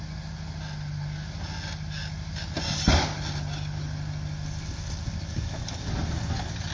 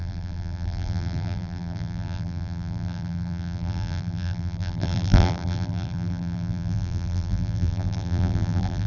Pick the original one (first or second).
first